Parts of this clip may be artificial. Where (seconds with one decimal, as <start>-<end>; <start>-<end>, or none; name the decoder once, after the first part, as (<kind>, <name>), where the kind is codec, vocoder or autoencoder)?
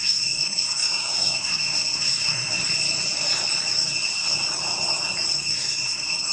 0.0-2.6 (codec, SNAC); 5.5-6.3